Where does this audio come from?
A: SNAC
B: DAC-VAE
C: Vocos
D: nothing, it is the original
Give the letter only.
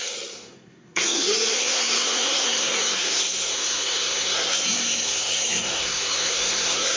A